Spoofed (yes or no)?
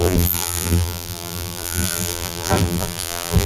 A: yes